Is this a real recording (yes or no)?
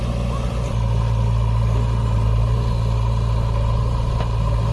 yes